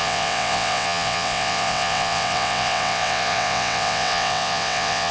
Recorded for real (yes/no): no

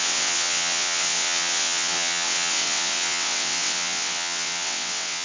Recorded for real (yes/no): no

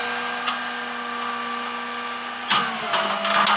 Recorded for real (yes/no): yes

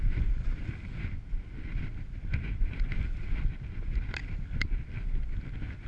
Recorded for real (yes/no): yes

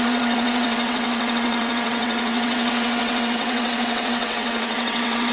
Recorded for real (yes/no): no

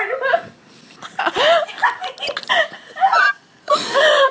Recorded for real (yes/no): yes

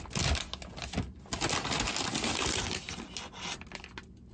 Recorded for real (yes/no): yes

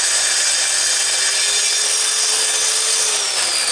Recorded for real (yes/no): yes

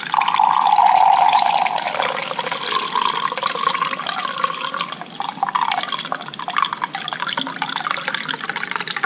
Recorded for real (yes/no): yes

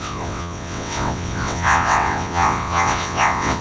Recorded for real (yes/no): no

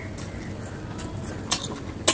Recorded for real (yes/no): yes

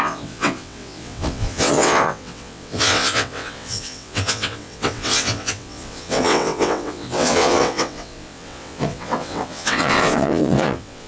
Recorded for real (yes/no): no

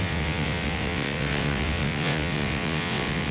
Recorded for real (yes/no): no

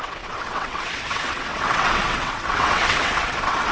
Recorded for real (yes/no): no